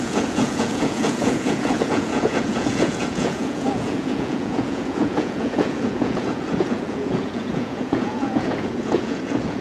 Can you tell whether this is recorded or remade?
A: remade